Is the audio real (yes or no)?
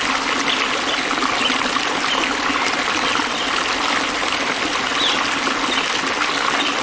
yes